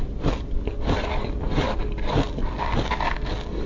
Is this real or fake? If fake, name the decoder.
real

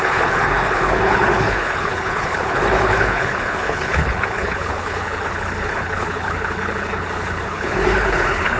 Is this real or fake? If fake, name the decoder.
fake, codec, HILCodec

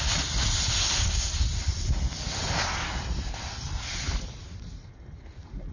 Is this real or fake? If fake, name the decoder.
real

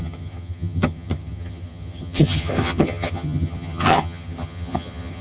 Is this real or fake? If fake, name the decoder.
fake, vocoder, HiFi-GAN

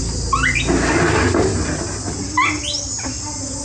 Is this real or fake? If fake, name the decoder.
real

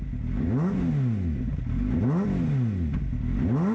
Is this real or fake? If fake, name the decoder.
real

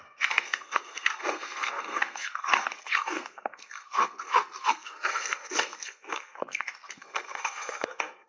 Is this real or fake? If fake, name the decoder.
fake, codec, SNAC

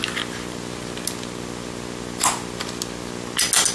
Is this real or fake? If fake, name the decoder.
real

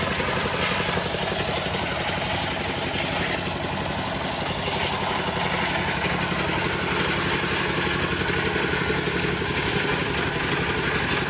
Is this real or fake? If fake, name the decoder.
real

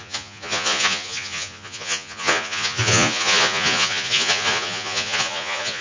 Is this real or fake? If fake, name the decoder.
fake, vocoder, Vocos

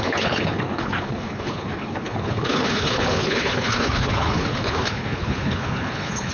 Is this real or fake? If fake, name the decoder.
fake, codec, HILCodec